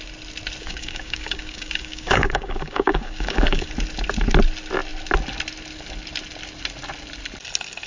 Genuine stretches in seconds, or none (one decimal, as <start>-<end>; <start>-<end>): 0.0-0.6; 3.7-7.9

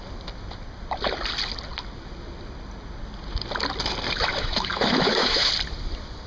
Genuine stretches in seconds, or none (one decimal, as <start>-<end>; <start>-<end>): 0.0-4.3; 5.5-6.3

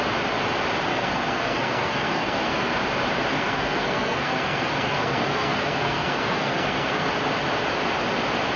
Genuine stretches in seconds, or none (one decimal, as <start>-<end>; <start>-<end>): 0.0-0.9; 2.8-3.3; 7.1-8.6

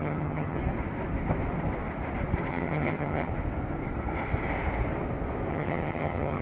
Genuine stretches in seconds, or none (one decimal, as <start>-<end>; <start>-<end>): 0.6-2.5; 3.3-5.5

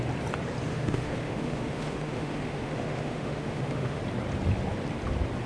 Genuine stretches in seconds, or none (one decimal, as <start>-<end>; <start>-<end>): 0.0-0.7; 4.0-5.5

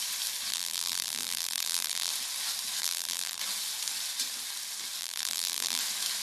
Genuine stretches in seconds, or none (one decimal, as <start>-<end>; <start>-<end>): 0.0-0.5; 2.1-2.8; 3.4-5.0; 5.8-6.2

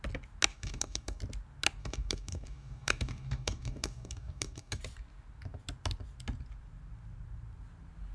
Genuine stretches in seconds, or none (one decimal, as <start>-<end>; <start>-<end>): 0.0-0.5; 1.2-1.8; 4.8-8.1

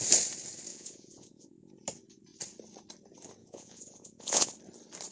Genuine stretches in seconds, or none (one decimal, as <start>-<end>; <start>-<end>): 0.0-0.7; 1.7-3.4; 4.5-5.1